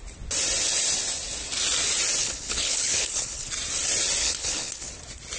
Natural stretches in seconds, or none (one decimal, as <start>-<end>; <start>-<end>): 0.0-2.2; 3.5-4.2; 4.9-5.4